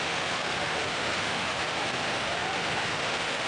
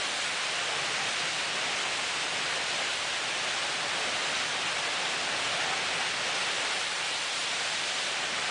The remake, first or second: first